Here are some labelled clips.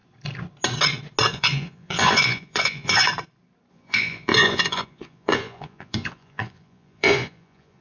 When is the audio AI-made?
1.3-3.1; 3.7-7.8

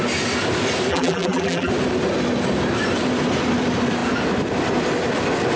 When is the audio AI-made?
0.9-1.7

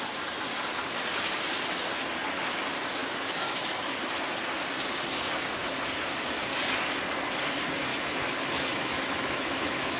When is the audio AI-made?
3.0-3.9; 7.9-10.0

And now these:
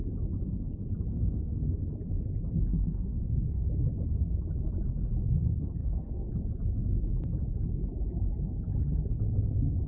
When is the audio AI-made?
1.1-1.9; 2.7-3.7; 5.8-6.3

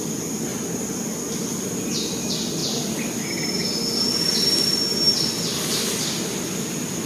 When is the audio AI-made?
none

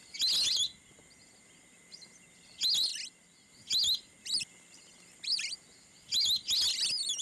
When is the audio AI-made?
none

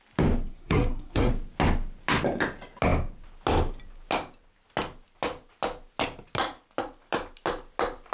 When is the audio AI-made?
0.5-1.3

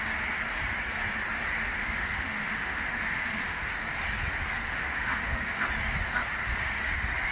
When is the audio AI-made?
1.8-3.7; 4.7-5.7